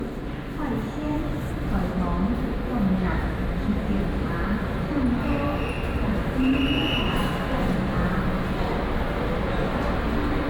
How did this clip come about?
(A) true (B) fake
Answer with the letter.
A